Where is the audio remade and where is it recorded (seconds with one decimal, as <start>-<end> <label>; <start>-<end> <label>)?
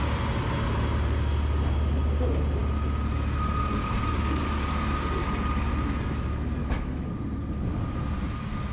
0.0-6.6 recorded; 6.6-7.1 remade; 7.1-8.7 recorded